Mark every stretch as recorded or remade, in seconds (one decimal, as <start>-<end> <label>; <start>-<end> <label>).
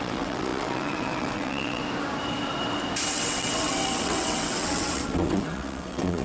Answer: 0.0-1.8 remade; 1.8-3.1 recorded; 3.1-6.2 remade